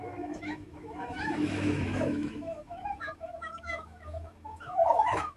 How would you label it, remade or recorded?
remade